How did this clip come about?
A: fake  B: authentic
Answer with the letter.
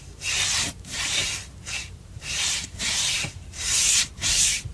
A